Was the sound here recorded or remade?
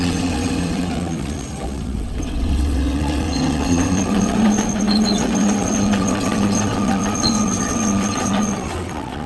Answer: remade